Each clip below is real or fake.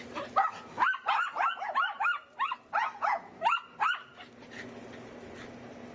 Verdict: real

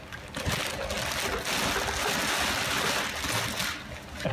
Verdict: real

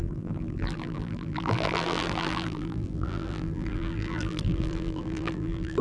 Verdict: fake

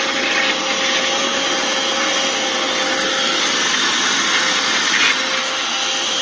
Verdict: real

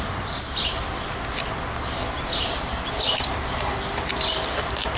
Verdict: fake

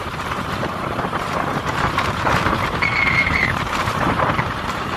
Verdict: fake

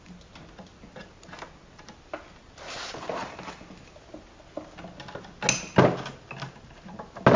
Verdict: real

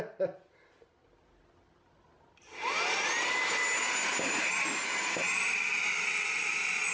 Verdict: real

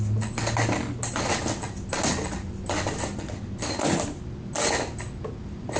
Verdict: real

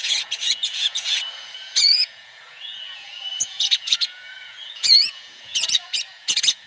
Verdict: fake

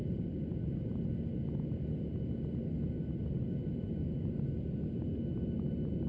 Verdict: real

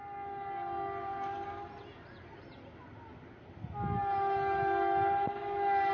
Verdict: real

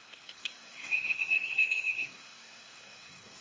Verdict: fake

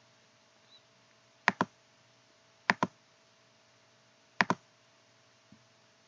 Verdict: real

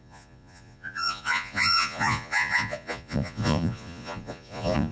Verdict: fake